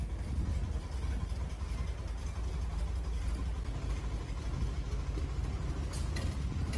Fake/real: real